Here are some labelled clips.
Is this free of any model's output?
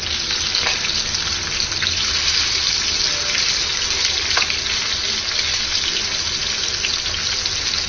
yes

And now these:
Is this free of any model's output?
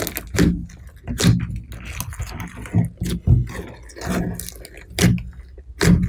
yes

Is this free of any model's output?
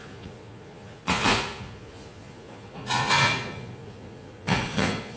no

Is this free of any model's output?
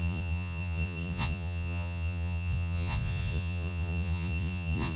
no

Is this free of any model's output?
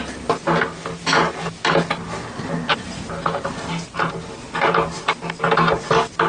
yes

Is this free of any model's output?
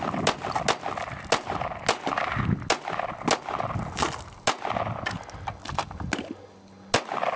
yes